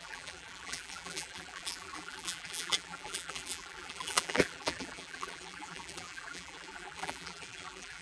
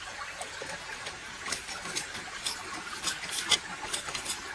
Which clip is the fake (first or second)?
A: first